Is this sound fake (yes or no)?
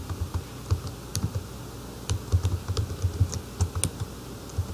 no